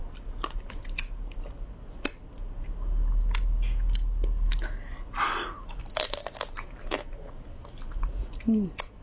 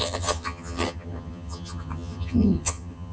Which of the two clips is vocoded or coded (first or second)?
second